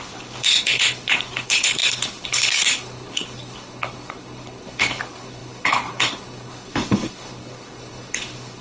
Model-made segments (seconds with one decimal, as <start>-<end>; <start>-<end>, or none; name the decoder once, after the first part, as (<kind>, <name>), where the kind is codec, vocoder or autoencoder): 0.0-8.6 (codec, HILCodec)